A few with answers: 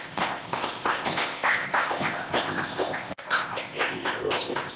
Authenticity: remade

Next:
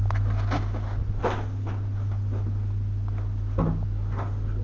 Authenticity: recorded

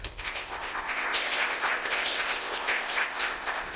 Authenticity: remade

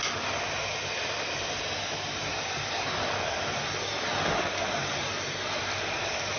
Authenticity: recorded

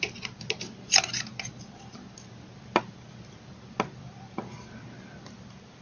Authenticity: recorded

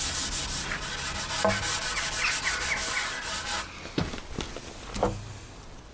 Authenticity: recorded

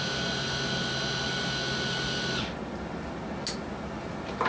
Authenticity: recorded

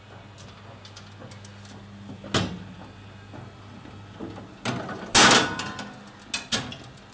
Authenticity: recorded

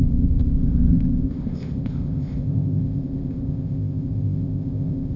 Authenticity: remade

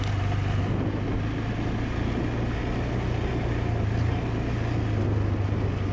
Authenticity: recorded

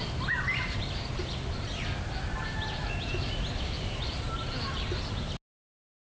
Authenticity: recorded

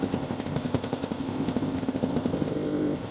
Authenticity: remade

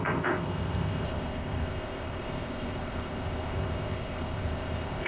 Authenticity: remade